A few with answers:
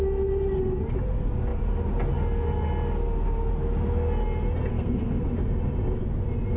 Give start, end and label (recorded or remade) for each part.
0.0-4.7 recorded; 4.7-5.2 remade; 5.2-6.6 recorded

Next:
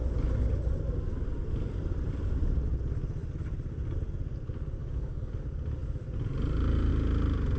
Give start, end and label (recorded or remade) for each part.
0.0-4.8 recorded; 4.8-5.3 remade; 5.3-7.6 recorded

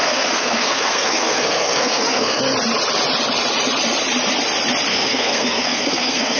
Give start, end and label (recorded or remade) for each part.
0.0-2.4 remade; 2.4-4.9 recorded; 4.9-6.4 remade

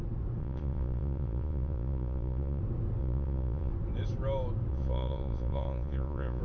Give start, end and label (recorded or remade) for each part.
0.0-0.4 recorded; 0.4-2.6 remade; 2.6-3.0 recorded; 3.0-3.7 remade; 3.7-4.7 recorded; 4.7-6.4 remade

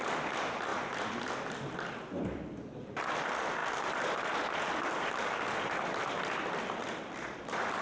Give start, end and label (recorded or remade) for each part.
0.0-7.8 recorded

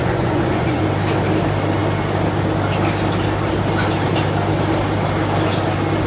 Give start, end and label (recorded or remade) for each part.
0.0-0.8 remade; 0.8-6.1 recorded